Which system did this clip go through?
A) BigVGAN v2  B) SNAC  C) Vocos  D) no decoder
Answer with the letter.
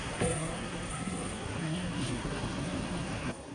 B